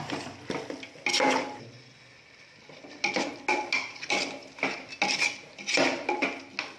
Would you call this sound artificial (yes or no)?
no